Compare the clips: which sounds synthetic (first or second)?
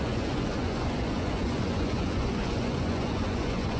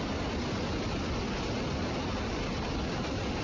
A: first